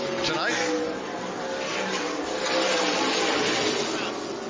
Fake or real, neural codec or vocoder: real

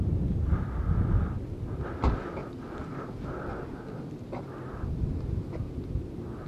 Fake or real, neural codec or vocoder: real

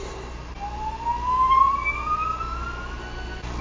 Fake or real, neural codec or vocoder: real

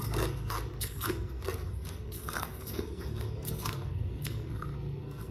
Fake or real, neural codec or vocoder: fake, codec, SNAC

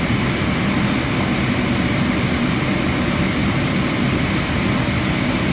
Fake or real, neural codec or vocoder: real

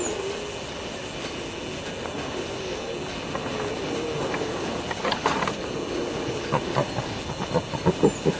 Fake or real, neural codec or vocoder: real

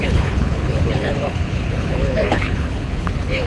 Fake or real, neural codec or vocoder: fake, codec, HILCodec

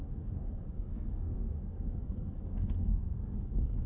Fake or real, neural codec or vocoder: fake, codec, SNAC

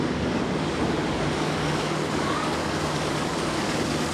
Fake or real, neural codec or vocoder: fake, codec, DAC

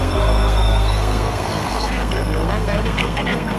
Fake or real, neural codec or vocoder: fake, codec, SNAC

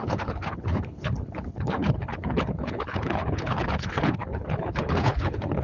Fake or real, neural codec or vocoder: fake, codec, HILCodec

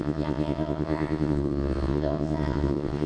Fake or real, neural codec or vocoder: fake, vocoder, Vocos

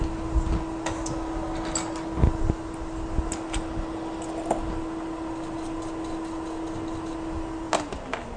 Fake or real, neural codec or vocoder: real